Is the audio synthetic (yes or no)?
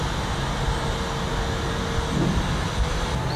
no